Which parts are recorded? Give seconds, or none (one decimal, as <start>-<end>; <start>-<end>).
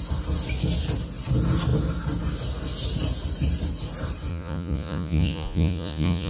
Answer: 0.0-4.3